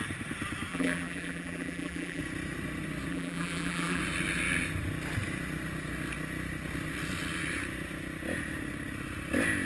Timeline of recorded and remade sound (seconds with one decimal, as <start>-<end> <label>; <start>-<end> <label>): 0.0-0.7 recorded; 0.7-2.2 remade; 2.2-3.1 recorded; 3.1-4.0 remade; 4.0-9.7 recorded